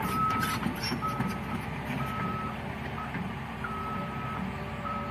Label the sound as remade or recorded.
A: remade